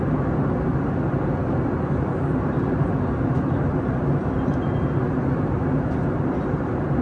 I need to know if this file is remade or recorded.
recorded